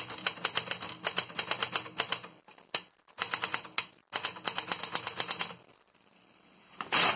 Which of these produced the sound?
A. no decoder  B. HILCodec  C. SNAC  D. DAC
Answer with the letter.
A